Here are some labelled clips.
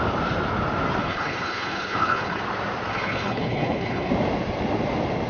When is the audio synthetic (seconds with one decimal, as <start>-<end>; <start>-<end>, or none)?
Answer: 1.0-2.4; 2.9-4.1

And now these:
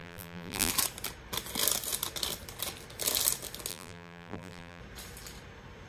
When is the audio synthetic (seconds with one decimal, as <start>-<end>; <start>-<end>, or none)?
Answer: 0.0-0.7; 3.7-4.8

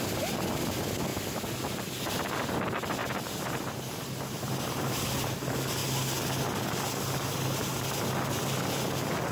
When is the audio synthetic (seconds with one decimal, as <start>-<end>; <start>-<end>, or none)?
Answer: 3.0-4.9